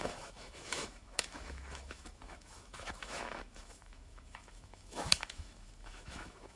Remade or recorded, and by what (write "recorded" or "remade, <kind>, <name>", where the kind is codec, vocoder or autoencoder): remade, autoencoder, DAC-VAE